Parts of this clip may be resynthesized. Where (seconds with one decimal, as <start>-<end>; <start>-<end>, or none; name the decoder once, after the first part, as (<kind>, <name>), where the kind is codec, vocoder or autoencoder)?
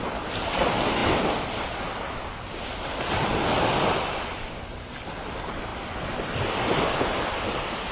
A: none